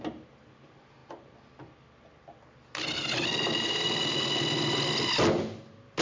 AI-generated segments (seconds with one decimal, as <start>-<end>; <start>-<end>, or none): none